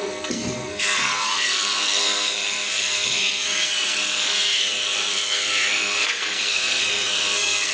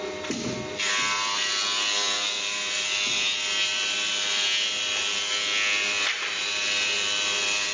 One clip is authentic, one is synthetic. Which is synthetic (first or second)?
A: first